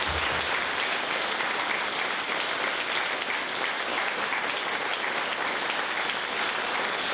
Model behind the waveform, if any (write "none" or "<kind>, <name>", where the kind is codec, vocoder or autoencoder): none